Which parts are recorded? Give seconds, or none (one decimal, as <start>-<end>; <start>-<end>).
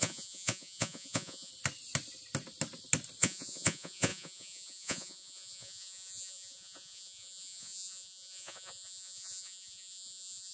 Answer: 1.5-3.2